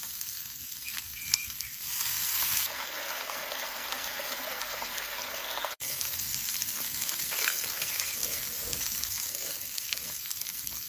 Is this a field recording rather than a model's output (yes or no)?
no